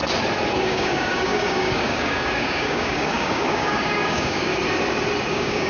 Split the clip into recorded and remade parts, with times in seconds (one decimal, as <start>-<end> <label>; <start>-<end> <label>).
0.0-0.6 recorded; 0.6-4.5 remade; 4.5-5.3 recorded; 5.3-5.7 remade